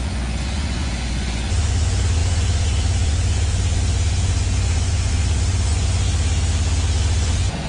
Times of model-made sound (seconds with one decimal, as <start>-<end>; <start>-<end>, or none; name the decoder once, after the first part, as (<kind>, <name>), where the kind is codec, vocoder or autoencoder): 0.0-6.1 (vocoder, Vocos); 7.0-7.7